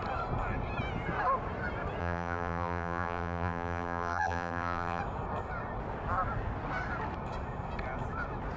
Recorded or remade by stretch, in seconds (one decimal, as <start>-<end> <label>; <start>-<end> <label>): 0.0-2.0 recorded; 2.0-5.0 remade; 5.0-8.6 recorded